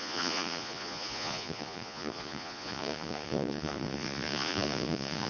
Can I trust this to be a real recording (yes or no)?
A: no